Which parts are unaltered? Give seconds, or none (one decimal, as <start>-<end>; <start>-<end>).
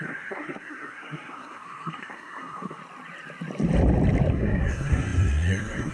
2.8-4.3